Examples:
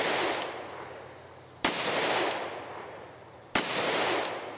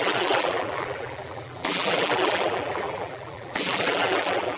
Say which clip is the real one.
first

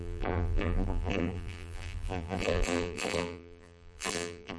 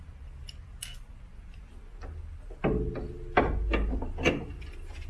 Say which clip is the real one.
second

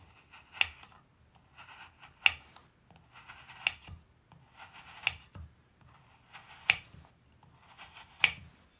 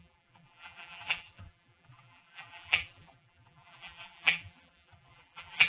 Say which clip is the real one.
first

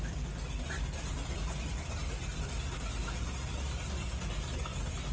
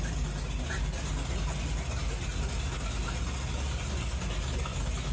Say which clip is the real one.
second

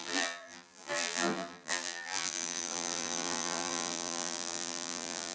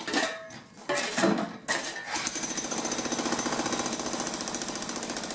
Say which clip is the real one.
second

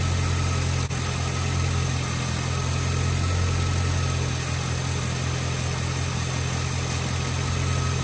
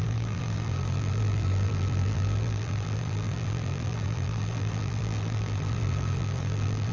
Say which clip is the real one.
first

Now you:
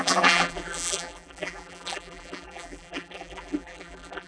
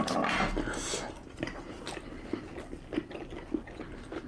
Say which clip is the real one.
second